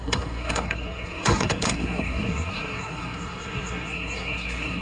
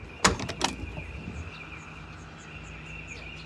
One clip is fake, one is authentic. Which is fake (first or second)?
first